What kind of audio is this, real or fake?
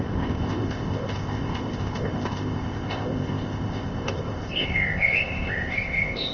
fake